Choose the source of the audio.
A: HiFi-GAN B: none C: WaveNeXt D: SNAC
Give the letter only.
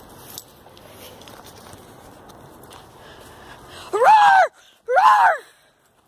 B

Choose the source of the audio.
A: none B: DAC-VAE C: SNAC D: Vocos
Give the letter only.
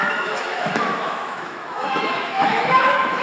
B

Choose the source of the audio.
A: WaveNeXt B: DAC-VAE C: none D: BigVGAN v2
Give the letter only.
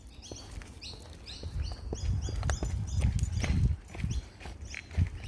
C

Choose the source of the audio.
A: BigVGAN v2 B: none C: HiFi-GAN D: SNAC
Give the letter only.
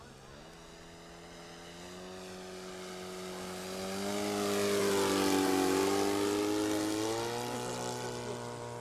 B